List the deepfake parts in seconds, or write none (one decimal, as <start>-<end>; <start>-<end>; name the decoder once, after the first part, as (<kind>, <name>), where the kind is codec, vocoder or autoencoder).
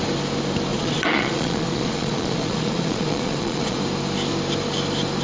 0.7-3.8 (vocoder, Vocos)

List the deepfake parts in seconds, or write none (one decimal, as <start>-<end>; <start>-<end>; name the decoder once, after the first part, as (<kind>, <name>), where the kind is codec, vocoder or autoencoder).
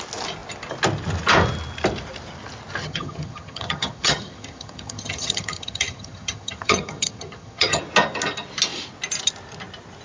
2.8-7.8 (vocoder, HiFi-GAN)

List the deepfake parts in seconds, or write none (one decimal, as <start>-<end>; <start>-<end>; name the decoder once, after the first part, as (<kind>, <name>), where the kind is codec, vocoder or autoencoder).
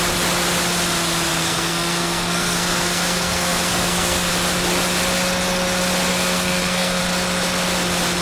1.3-4.3 (codec, SNAC); 6.1-7.0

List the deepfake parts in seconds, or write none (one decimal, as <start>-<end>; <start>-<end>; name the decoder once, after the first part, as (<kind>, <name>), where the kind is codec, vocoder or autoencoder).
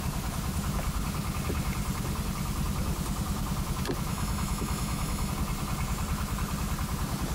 4.1-5.3 (autoencoder, DAC-VAE)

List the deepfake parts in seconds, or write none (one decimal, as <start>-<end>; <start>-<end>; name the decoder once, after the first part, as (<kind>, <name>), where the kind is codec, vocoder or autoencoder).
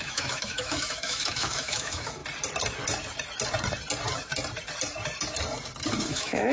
0.0-2.2 (autoencoder, DAC-VAE); 6.1-6.5